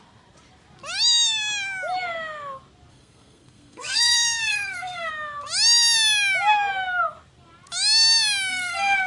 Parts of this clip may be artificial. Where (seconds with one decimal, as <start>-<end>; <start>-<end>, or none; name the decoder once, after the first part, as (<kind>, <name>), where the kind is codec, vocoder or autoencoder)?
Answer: 2.9-5.1 (codec, SNAC); 8.5-9.1